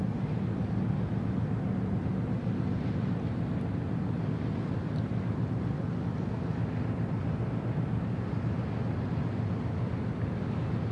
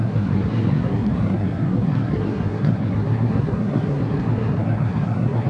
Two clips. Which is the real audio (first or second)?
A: first